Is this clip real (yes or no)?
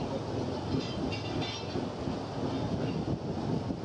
yes